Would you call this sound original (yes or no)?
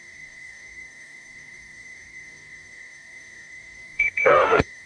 no